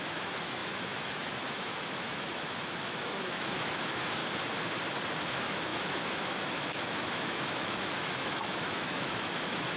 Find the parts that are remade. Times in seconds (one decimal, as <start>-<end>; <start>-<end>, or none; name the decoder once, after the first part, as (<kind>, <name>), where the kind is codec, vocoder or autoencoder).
0.0-4.2 (autoencoder, DAC-VAE); 5.3-9.8